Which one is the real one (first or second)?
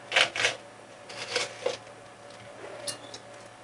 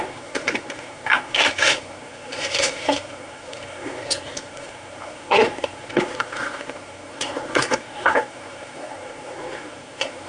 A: first